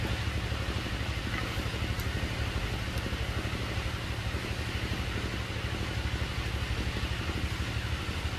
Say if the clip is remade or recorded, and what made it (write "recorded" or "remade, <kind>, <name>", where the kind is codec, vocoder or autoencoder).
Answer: recorded